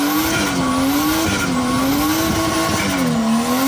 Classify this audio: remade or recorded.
recorded